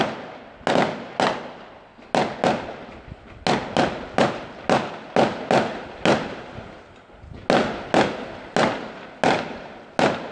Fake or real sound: real